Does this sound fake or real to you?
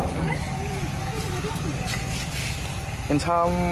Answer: real